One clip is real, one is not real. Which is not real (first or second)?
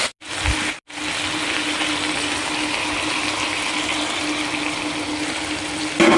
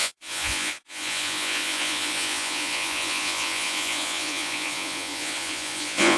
second